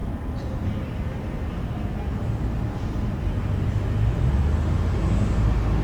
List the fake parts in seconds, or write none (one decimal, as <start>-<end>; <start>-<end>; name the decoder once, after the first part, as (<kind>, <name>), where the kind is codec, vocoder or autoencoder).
none

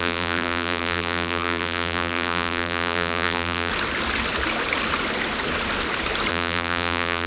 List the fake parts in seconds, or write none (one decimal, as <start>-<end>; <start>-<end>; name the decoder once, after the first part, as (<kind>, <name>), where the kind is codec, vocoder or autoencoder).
0.0-3.7 (vocoder, BigVGAN v2); 6.3-7.3

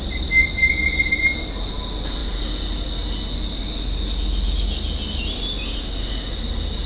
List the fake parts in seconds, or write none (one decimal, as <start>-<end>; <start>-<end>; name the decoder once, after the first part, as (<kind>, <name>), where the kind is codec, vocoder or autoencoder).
none

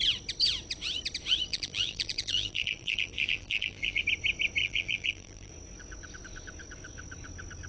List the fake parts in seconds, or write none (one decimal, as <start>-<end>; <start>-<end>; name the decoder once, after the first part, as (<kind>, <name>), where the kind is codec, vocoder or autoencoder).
1.5-4.0 (vocoder, BigVGAN v2); 4.6-5.5

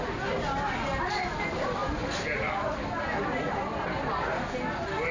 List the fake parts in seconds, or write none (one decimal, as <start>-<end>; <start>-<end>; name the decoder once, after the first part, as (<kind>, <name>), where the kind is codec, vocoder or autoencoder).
none

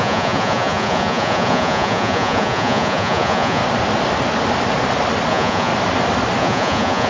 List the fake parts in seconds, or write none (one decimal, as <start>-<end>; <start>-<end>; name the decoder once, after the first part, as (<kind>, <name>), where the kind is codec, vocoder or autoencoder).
0.0-3.6 (vocoder, Vocos); 5.3-5.7; 6.4-7.1

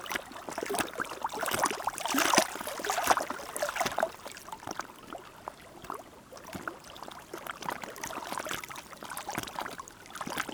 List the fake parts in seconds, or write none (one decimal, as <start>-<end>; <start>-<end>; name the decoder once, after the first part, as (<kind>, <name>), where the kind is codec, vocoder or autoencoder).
none

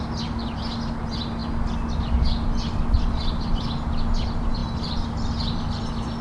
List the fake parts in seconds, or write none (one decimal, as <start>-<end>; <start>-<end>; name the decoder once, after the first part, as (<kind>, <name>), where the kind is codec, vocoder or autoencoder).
none